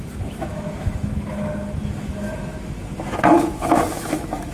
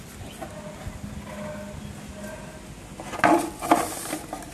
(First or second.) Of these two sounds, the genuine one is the second